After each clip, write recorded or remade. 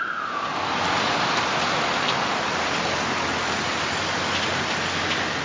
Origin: recorded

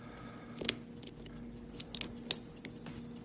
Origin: recorded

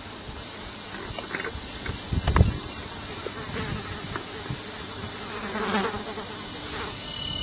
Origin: recorded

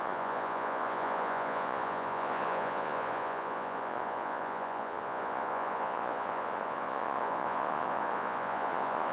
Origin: remade